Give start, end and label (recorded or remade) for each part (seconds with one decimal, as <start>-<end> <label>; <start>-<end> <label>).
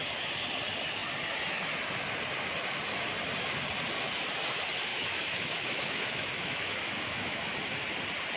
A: 0.0-4.9 recorded; 4.9-7.4 remade; 7.4-8.4 recorded